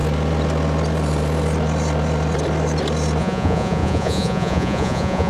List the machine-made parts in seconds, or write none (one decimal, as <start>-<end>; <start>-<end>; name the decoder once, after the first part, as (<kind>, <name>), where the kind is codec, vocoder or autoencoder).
3.2-5.3 (vocoder, Vocos)